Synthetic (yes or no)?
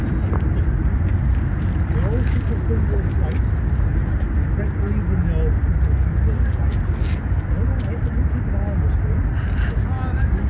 no